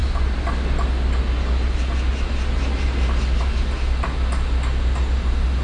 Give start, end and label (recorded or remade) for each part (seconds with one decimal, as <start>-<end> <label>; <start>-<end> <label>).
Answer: 0.0-5.6 recorded